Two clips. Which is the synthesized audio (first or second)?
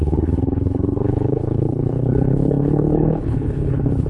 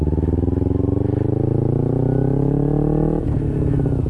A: first